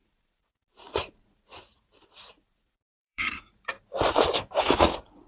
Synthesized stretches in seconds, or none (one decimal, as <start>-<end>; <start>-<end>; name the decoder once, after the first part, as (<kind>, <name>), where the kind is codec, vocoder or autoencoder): 0.0-3.7 (vocoder, Vocos); 4.6-5.3